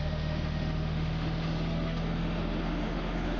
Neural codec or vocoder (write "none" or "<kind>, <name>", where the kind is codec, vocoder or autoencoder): autoencoder, DAC-VAE